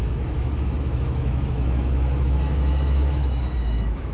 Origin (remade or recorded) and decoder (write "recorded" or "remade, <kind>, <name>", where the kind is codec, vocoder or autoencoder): remade, autoencoder, DAC-VAE